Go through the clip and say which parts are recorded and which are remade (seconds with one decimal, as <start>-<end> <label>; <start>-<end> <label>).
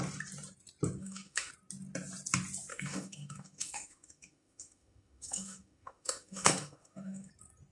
0.0-1.0 recorded; 1.0-1.5 remade; 1.5-2.7 recorded; 2.7-7.3 remade; 7.3-7.7 recorded